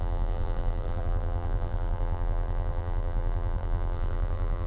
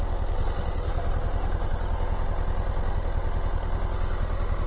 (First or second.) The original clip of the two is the second